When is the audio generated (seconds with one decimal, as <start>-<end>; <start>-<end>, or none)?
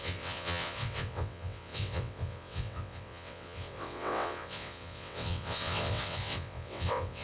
0.0-7.2